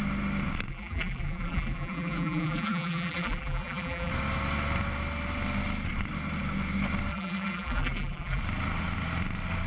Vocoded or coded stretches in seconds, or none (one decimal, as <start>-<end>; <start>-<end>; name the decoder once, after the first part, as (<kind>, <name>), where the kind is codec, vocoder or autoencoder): 0.7-4.1 (vocoder, BigVGAN v2); 7.1-8.4